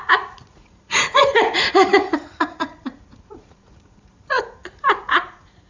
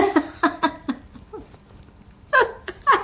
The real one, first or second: second